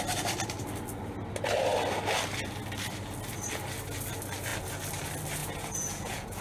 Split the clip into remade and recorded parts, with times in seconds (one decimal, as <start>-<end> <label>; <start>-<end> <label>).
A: 0.0-5.4 recorded; 5.4-6.4 remade